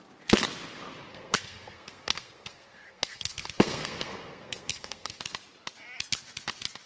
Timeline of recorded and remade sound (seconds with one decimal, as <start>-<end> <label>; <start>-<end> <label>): 0.0-1.1 recorded; 1.1-5.2 remade; 5.2-6.9 recorded